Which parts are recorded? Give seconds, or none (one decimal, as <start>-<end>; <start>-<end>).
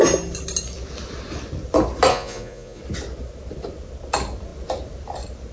0.0-2.1; 2.8-5.5